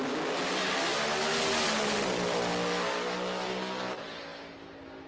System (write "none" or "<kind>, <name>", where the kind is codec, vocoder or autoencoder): none